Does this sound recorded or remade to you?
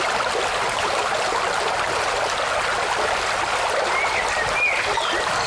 recorded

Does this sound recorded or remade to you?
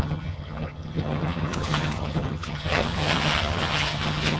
remade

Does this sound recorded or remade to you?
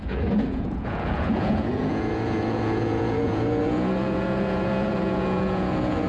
remade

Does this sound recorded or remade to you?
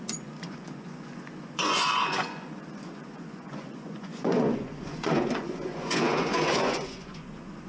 remade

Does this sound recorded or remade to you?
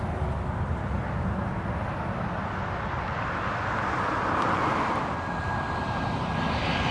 recorded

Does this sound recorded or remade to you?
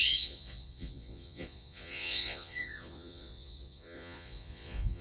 remade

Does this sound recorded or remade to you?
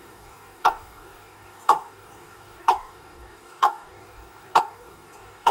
remade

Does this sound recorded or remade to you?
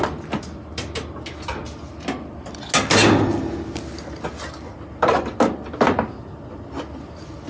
recorded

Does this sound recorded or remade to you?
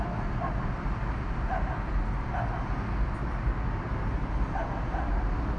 recorded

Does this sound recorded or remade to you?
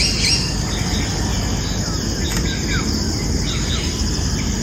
recorded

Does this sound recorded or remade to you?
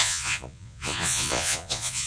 remade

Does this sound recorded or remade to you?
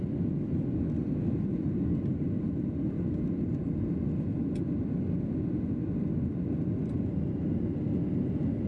recorded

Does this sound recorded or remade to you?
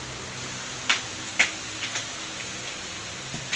recorded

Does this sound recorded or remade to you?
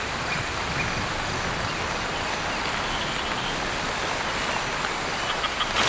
recorded